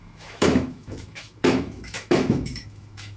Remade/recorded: remade